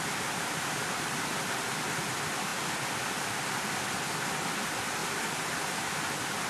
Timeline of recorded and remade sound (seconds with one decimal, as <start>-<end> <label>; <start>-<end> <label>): 0.0-6.5 recorded